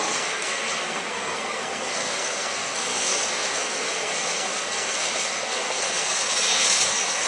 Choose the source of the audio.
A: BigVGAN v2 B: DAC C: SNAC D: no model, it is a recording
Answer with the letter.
C